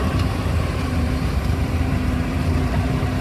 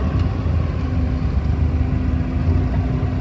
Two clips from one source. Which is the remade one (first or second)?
first